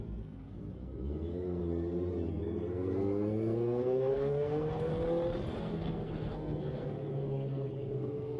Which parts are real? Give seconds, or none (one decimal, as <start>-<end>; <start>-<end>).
1.6-2.3; 4.9-5.6